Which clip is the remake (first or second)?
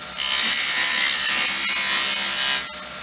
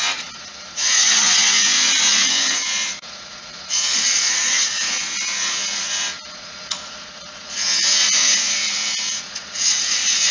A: second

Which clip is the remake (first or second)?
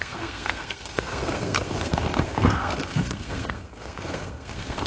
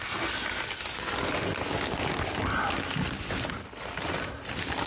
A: first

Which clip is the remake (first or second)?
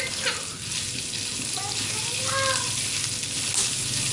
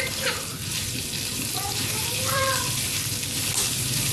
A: second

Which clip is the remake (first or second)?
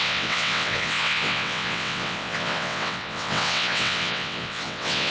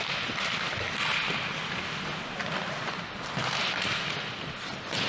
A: first